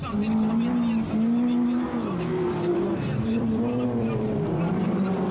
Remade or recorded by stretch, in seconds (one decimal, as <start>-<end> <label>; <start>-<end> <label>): 0.0-2.7 recorded; 2.7-5.3 remade